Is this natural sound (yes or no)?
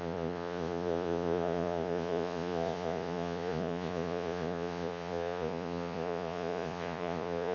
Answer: no